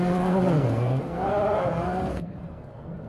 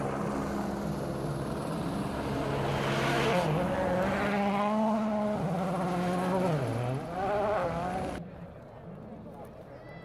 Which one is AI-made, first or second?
first